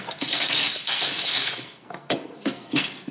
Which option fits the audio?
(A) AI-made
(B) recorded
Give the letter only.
A